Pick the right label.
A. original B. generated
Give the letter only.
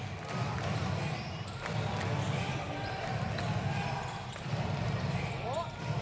A